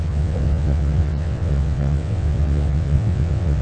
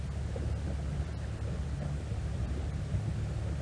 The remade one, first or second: first